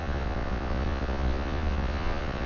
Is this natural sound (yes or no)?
no